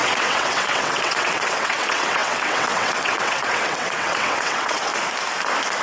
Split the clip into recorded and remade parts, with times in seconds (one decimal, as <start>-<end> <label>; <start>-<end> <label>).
0.0-4.9 remade; 4.9-5.8 recorded